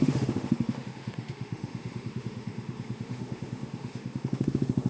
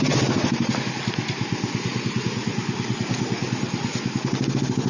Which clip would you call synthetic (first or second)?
first